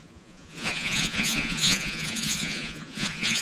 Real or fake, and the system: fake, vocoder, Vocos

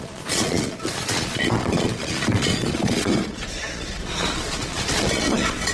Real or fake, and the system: fake, vocoder, Vocos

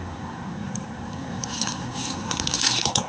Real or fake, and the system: fake, codec, SNAC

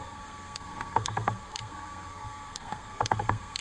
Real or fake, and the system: fake, codec, SNAC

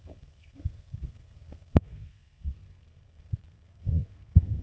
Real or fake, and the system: fake, codec, SNAC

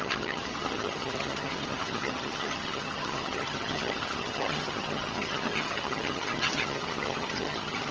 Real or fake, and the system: fake, vocoder, HiFi-GAN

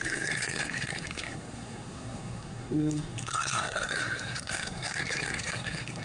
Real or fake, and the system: fake, codec, SNAC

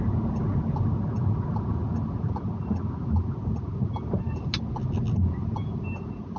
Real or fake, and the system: real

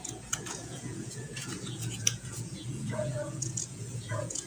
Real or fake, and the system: fake, vocoder, Vocos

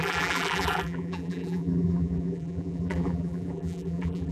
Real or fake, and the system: fake, vocoder, BigVGAN v2